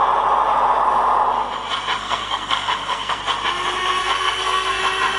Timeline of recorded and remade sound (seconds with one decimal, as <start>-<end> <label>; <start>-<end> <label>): 0.0-2.0 recorded; 2.0-3.2 remade; 3.2-4.0 recorded; 4.0-4.8 remade; 4.8-5.2 recorded